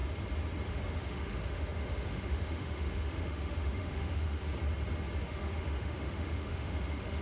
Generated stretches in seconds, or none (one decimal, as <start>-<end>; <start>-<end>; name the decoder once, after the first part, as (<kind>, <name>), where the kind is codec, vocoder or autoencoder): 0.7-4.5 (autoencoder, DAC-VAE); 5.2-7.2